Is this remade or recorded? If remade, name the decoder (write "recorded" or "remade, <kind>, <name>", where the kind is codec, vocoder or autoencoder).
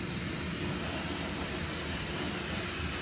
recorded